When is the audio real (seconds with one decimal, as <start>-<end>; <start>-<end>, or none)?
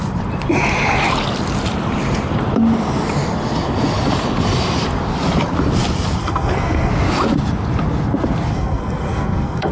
0.0-6.2; 6.9-8.5